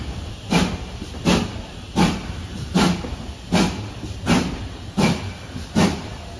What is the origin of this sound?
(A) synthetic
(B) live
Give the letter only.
B